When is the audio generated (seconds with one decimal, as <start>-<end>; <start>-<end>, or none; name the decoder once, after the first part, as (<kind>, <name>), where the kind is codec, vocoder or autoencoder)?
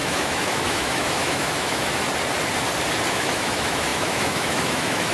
0.0-1.9 (autoencoder, DAC-VAE); 3.1-5.1